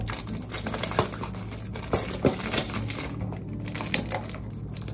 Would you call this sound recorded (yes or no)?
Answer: yes